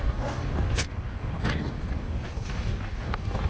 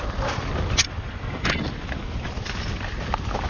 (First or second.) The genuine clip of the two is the second